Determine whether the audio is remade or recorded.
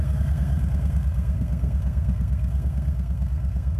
remade